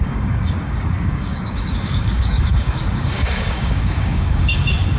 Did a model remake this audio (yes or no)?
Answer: yes